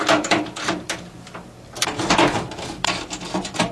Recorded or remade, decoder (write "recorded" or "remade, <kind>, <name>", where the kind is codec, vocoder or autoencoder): remade, vocoder, BigVGAN v2